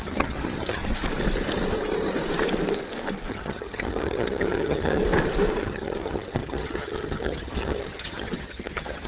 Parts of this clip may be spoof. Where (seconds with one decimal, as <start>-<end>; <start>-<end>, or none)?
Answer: 0.0-0.8; 3.3-5.0; 5.6-9.1